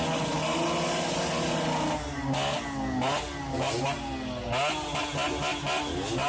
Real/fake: real